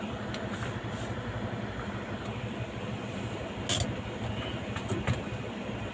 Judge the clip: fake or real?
real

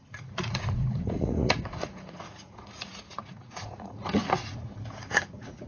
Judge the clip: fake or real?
fake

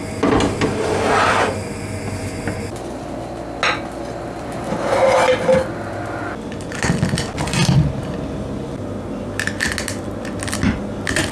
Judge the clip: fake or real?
real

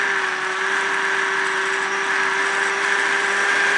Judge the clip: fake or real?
real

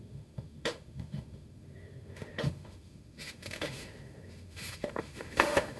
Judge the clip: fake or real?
fake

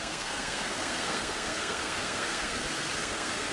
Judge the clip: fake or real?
fake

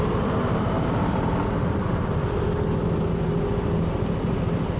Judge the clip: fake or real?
real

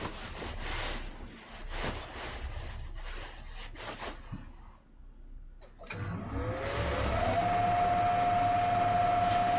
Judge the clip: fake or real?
real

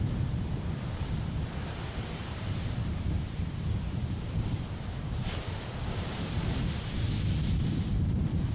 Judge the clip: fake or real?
fake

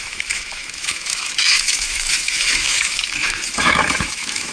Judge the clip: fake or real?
fake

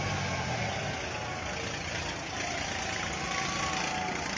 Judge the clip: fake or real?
real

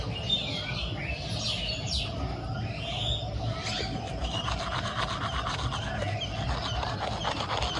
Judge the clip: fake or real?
real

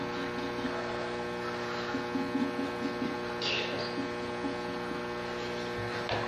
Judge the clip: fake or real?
real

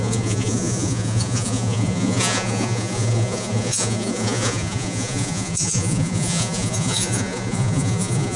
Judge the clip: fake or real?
fake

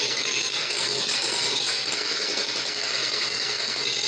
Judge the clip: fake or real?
fake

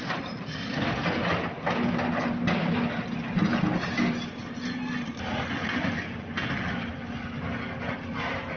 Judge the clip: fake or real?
real